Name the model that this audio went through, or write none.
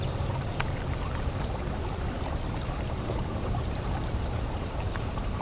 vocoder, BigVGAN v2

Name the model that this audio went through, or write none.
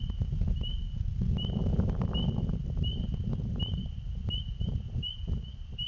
none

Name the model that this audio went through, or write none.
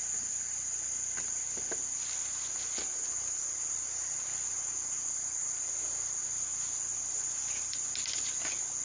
none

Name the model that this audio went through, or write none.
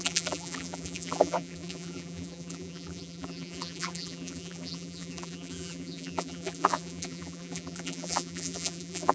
vocoder, BigVGAN v2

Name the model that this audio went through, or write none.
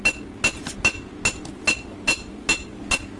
none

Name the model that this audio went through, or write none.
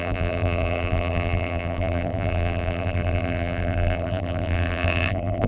vocoder, BigVGAN v2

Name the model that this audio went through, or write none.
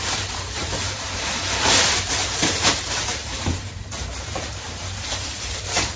vocoder, BigVGAN v2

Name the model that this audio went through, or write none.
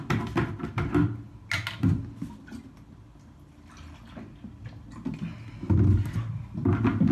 none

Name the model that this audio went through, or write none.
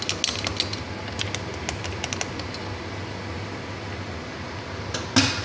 none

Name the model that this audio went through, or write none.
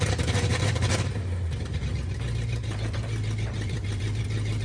vocoder, BigVGAN v2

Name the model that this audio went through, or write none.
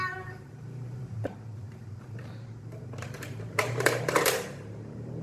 vocoder, BigVGAN v2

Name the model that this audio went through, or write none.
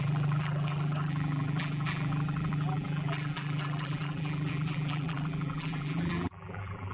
vocoder, BigVGAN v2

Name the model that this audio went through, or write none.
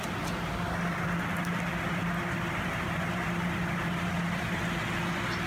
none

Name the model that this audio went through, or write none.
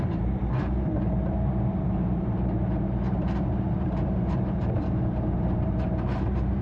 vocoder, BigVGAN v2